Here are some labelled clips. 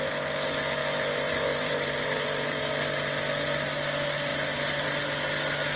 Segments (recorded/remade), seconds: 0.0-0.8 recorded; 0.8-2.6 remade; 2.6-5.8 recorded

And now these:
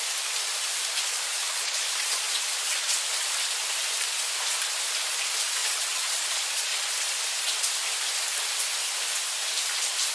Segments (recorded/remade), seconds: 0.0-1.4 recorded; 1.4-3.0 remade; 3.0-5.6 recorded; 5.6-6.9 remade; 6.9-10.1 recorded

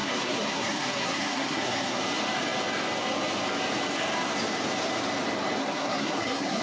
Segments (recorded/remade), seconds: 0.0-2.0 remade; 2.0-5.6 recorded; 5.6-6.6 remade

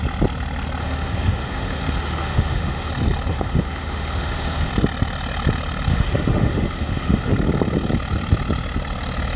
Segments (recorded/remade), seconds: 0.0-0.8 recorded; 0.8-2.9 remade; 2.9-3.3 recorded; 3.3-4.7 remade; 4.7-5.9 recorded; 5.9-7.3 remade; 7.3-9.4 recorded

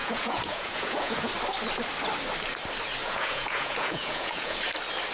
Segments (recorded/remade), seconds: 0.0-1.3 remade; 1.3-3.0 recorded; 3.0-4.6 remade; 4.6-5.1 recorded

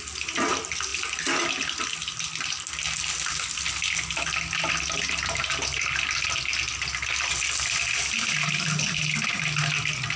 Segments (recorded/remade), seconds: 0.0-10.2 recorded